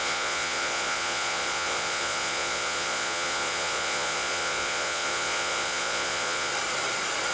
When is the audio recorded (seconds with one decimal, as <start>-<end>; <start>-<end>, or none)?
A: 6.5-7.3